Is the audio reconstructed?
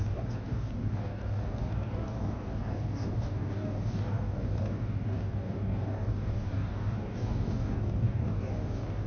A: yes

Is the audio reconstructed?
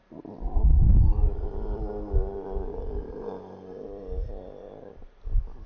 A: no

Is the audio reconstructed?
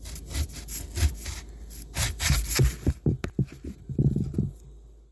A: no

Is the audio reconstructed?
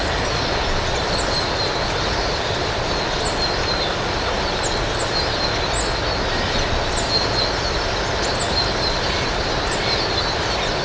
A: no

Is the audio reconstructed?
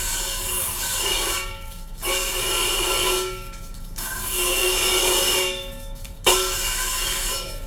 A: yes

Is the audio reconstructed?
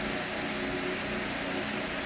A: no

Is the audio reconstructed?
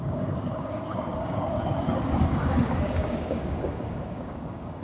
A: yes